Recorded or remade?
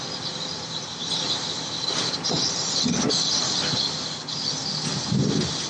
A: recorded